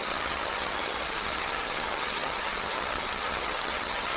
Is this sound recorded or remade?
remade